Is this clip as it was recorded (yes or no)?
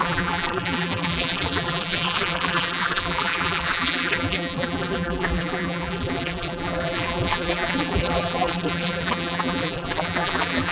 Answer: no